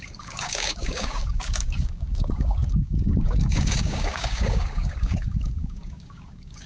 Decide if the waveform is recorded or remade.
remade